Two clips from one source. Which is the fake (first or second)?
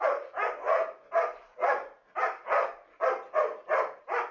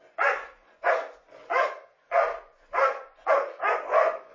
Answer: second